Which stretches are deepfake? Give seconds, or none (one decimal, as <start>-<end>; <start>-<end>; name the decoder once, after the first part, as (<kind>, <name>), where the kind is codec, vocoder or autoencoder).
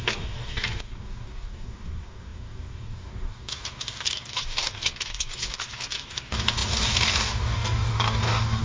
0.0-8.6 (codec, DAC)